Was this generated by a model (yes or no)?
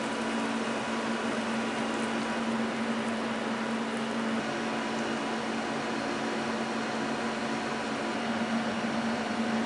no